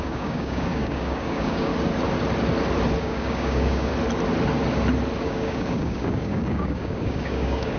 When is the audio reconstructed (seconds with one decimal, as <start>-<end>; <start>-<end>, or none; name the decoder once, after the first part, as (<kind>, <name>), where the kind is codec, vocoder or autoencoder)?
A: 0.0-1.7 (codec, DAC); 3.0-3.9; 5.2-7.8